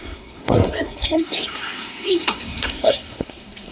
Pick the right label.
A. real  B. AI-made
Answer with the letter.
B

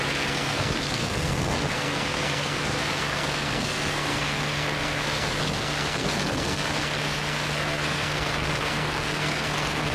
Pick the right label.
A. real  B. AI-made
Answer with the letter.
B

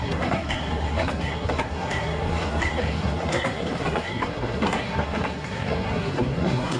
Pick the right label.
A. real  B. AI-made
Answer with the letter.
B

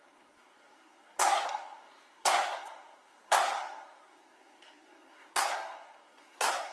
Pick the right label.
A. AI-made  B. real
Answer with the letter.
A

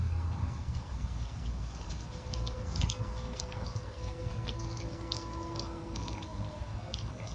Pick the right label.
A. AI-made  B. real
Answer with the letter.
A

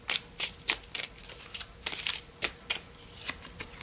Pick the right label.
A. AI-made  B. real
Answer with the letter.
B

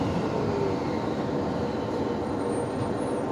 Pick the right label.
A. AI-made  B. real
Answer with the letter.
B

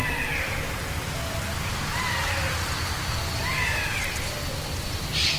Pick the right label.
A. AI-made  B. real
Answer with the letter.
B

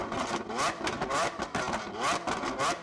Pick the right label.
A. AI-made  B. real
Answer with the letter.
B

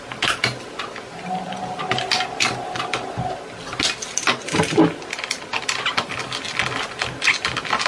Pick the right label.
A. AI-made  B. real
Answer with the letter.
B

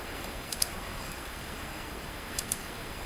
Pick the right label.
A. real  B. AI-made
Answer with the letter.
B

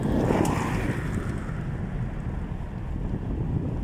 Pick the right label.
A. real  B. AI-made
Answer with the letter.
A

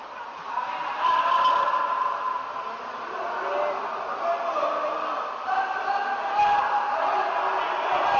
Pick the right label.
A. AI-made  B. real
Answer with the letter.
B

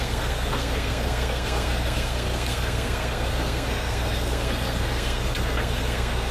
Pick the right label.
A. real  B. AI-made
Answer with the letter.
B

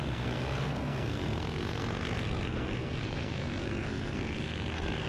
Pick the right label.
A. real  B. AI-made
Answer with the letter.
B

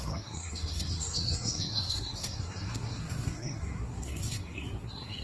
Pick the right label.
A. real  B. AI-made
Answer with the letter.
B